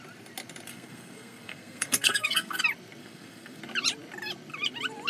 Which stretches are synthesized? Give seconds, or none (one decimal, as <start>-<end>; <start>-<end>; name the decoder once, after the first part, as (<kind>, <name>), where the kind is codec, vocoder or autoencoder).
0.7-2.6 (codec, SNAC); 3.0-3.6